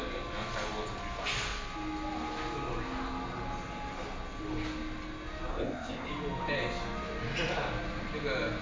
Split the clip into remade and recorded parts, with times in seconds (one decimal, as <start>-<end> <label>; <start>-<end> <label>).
0.0-5.5 recorded; 5.5-6.1 remade; 6.1-8.6 recorded